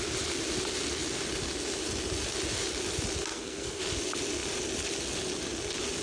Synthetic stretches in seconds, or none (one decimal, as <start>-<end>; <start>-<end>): 3.3-3.8